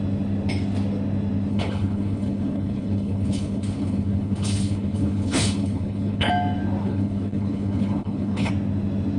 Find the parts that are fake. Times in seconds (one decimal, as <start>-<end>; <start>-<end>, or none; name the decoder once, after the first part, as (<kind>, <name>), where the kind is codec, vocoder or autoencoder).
1.5-6.3 (codec, HILCodec); 6.8-8.5